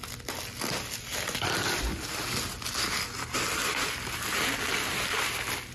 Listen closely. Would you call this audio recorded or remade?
recorded